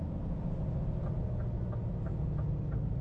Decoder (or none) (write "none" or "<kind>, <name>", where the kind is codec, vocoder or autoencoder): none